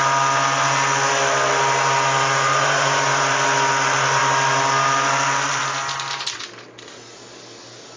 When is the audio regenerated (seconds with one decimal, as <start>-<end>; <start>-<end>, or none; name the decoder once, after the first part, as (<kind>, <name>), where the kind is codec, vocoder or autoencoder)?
2.5-3.2 (vocoder, Vocos)